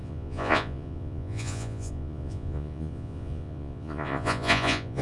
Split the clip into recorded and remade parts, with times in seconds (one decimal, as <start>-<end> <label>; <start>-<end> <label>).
0.0-5.0 remade